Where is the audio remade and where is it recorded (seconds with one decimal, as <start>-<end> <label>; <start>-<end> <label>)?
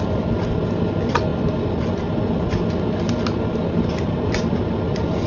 0.0-5.3 recorded